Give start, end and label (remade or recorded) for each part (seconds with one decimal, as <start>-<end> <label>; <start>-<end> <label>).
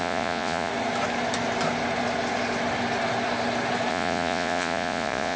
0.0-0.7 remade; 0.7-3.9 recorded; 3.9-5.4 remade